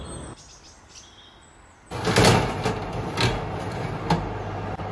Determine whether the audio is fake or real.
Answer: real